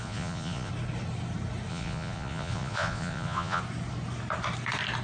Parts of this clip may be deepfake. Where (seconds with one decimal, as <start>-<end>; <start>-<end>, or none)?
0.0-0.7; 1.7-3.6